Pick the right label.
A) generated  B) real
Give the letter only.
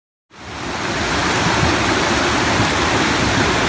B